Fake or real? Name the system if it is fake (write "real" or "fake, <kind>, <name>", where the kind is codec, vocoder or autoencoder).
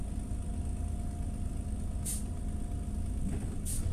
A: real